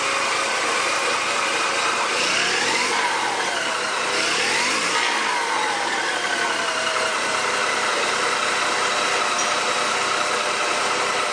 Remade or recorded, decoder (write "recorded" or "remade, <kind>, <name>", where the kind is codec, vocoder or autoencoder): recorded